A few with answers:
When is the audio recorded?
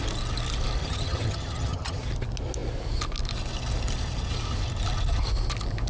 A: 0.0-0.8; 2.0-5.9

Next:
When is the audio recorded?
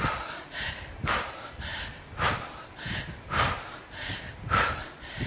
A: 0.0-5.3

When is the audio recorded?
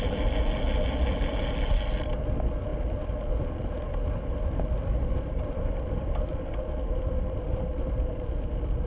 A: 0.0-8.9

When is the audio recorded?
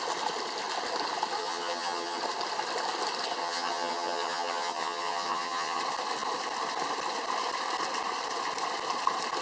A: 0.0-1.4; 2.2-3.4; 5.8-9.4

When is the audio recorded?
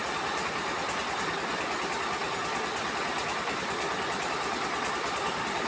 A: 0.0-5.7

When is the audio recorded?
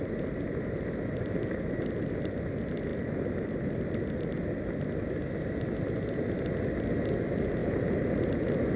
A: 0.0-8.8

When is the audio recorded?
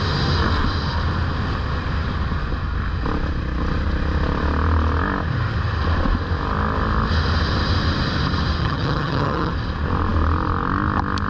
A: 0.0-8.6; 9.5-11.3